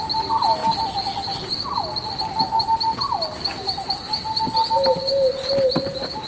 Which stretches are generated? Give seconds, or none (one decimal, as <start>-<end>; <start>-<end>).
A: none